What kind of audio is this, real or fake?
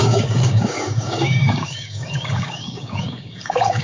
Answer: fake